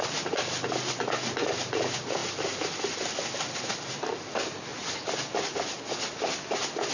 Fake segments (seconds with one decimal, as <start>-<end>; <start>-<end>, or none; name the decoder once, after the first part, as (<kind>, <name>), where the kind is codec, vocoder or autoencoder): none